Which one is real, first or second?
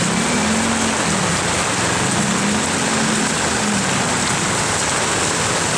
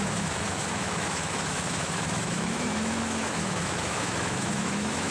first